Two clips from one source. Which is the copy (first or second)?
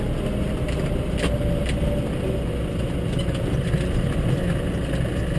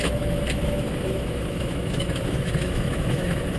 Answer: second